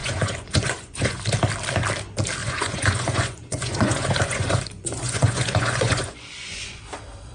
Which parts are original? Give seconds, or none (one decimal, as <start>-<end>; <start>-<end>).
1.2-2.4; 6.8-7.3